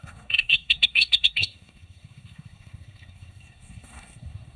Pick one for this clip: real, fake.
fake